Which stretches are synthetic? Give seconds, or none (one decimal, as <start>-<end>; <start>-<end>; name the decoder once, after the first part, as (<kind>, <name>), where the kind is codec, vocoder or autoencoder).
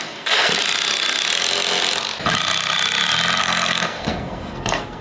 0.0-0.5 (codec, SNAC); 3.4-5.0